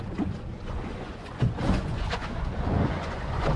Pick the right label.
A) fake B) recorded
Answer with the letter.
A